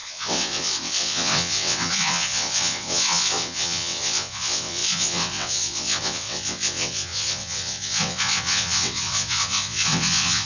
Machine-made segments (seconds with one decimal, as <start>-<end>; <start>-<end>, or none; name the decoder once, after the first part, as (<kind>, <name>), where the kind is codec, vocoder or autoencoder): 0.0-10.5 (vocoder, WaveNeXt)